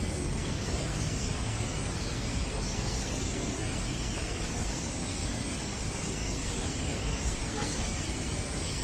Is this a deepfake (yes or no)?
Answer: yes